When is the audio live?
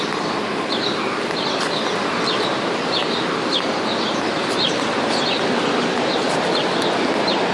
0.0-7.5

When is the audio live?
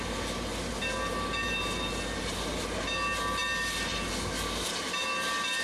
0.0-5.6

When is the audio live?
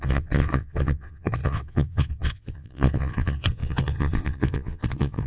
none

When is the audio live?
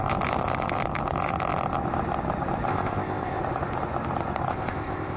0.0-2.7; 3.4-4.5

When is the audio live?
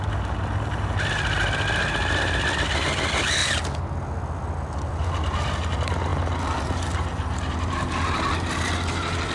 0.0-9.3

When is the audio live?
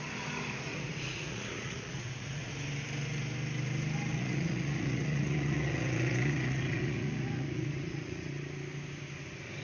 0.0-0.7; 2.5-4.1; 8.3-9.6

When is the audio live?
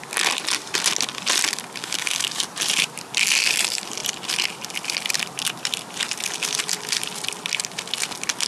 0.0-1.8; 2.4-8.5